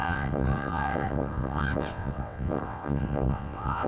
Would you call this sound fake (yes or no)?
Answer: yes